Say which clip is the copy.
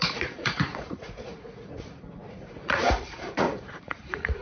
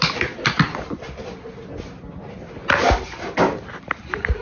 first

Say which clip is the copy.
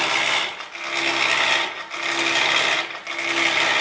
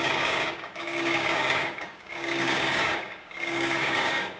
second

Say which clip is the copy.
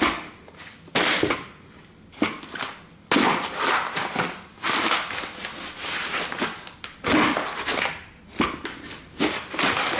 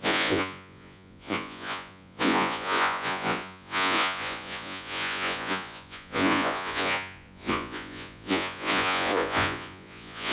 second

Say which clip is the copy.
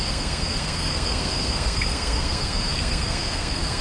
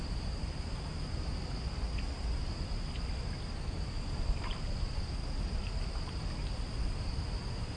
first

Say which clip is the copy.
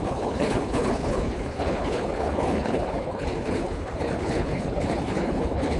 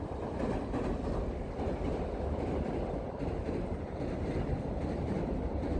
first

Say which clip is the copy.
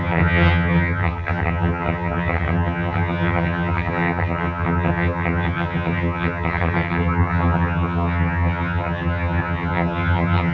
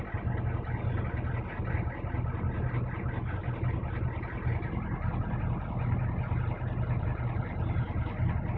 first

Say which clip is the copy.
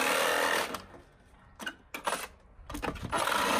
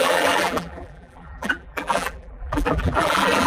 second